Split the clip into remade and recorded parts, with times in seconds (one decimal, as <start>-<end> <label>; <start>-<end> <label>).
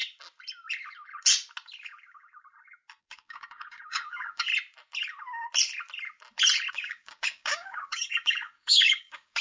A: 0.0-3.0 recorded; 3.0-4.5 remade; 4.5-6.7 recorded; 6.7-9.4 remade